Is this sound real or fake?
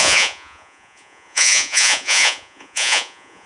fake